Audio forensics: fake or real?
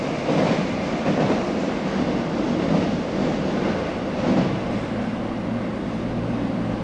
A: real